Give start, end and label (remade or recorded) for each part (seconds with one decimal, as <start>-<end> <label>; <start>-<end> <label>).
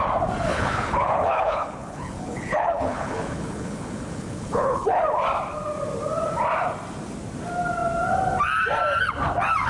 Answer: 0.0-0.5 recorded; 0.5-5.0 remade; 5.0-9.7 recorded